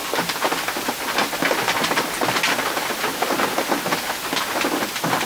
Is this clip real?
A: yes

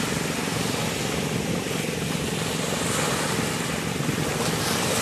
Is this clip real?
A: yes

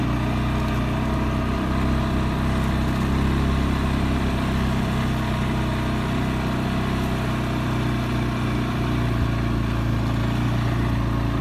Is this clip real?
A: yes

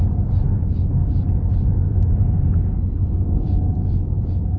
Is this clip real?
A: yes